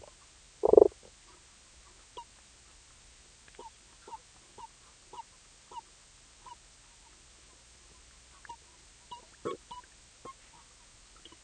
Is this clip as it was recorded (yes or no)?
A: yes